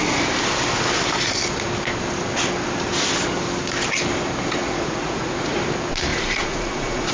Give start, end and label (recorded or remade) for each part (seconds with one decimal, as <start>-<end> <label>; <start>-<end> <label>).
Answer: 0.0-4.6 recorded; 4.6-5.6 remade; 5.6-6.1 recorded; 6.1-7.1 remade